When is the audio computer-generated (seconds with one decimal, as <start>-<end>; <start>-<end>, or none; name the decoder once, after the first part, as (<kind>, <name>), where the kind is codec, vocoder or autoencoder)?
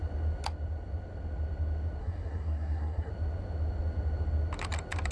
2.0-3.1 (codec, SNAC)